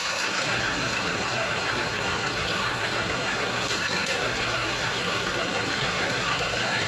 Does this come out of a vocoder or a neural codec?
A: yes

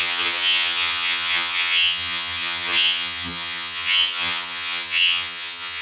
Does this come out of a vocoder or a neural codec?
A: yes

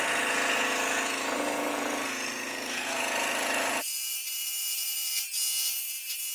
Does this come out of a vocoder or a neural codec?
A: yes